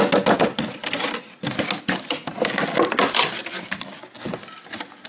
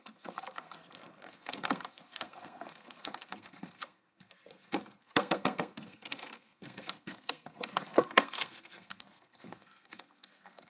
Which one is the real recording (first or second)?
first